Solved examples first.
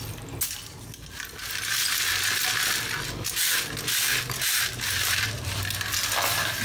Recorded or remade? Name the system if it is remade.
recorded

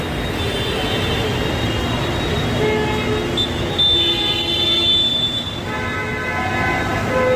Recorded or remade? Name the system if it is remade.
recorded